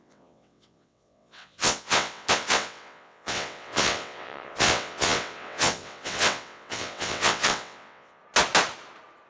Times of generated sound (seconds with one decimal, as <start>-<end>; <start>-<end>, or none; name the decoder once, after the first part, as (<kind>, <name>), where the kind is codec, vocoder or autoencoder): 0.0-8.2 (vocoder, WaveNeXt)